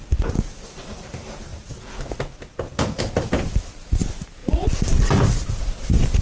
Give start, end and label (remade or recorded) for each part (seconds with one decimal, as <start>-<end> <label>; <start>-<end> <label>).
0.0-1.5 remade; 1.5-3.0 recorded; 3.0-4.4 remade; 4.4-5.5 recorded; 5.5-6.2 remade